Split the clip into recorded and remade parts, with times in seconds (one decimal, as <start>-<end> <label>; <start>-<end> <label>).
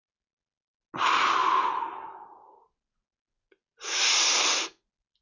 0.0-5.2 recorded